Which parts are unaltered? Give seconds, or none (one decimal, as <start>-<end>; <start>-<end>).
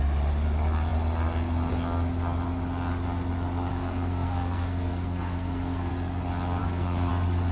0.0-3.7; 5.9-6.6; 7.1-7.5